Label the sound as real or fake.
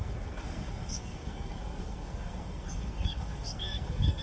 fake